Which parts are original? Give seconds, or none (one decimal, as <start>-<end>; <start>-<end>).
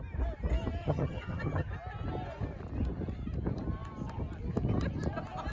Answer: 0.0-0.8; 1.7-5.5